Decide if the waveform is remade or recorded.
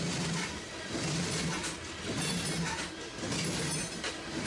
recorded